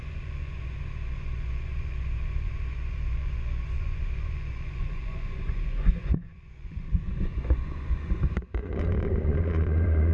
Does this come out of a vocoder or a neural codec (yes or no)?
yes